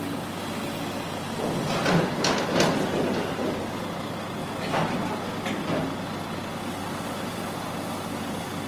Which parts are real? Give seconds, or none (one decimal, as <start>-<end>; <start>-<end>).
0.0-8.7